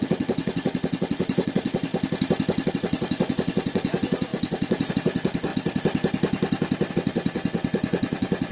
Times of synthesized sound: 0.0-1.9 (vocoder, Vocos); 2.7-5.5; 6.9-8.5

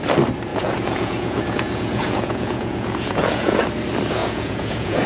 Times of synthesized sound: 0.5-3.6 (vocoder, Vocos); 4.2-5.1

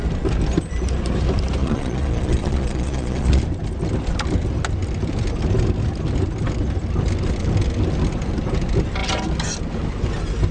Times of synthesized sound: 1.6-3.4 (vocoder, Vocos)